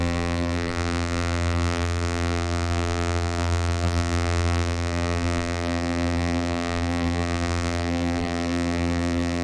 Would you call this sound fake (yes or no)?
yes